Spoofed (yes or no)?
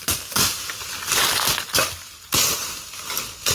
no